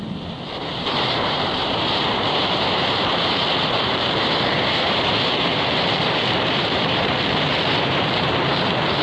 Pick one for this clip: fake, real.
fake